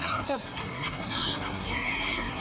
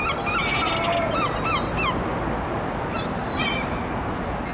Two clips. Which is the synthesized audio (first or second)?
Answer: first